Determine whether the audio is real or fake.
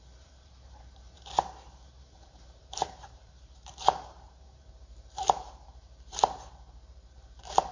fake